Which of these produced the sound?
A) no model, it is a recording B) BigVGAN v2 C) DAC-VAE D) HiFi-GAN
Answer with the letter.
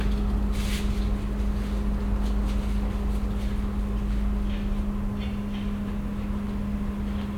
A